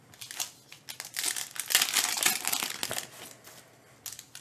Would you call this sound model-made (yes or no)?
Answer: no